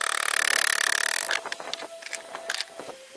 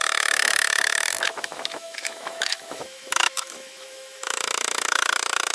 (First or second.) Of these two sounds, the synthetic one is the second